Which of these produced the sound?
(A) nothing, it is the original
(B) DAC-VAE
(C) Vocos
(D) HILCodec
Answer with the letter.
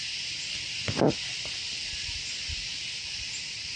A